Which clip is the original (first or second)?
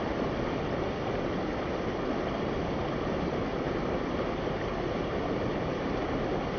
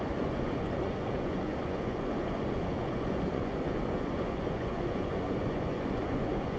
first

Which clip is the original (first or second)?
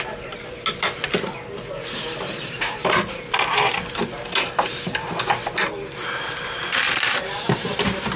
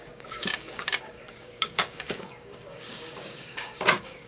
first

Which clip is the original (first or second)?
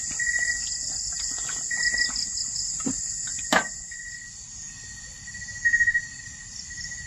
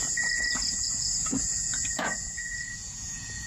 first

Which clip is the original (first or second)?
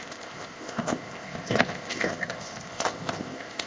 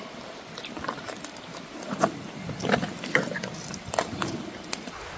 second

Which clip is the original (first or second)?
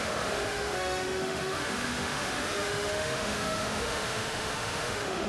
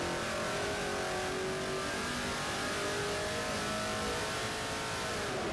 second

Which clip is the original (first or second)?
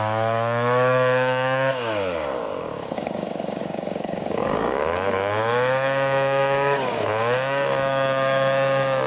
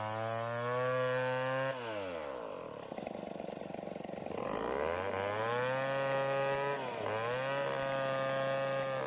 second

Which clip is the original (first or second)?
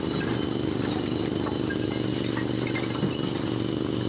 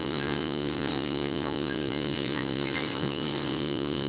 first